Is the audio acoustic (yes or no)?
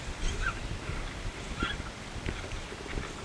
yes